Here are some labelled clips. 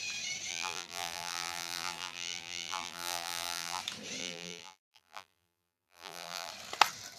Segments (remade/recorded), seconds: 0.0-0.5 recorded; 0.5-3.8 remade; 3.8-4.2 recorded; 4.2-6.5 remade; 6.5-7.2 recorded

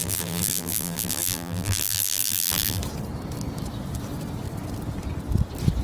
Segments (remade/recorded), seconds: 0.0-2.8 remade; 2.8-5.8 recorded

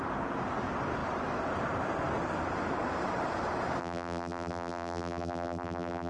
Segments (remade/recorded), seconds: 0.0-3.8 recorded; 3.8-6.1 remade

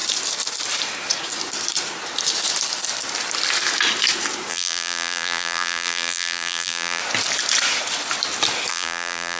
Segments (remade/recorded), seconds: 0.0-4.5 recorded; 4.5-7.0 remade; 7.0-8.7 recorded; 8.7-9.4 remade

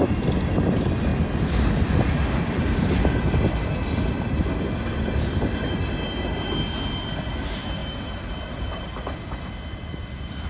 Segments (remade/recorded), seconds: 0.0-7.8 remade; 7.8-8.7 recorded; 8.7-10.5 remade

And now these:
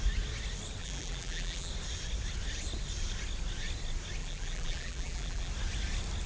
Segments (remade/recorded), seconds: 0.0-0.8 recorded; 0.8-1.7 remade; 1.7-4.2 recorded; 4.2-5.5 remade; 5.5-6.3 recorded

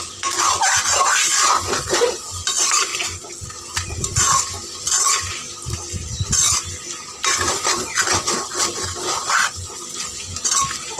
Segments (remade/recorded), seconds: 0.0-2.9 recorded; 2.9-3.5 remade; 3.5-8.5 recorded; 8.5-10.2 remade; 10.2-11.0 recorded

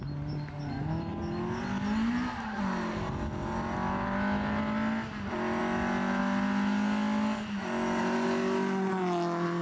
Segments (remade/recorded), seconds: 0.0-9.6 recorded